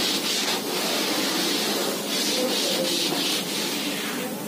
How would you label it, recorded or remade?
recorded